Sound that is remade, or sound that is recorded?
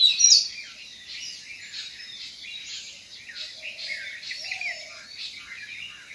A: recorded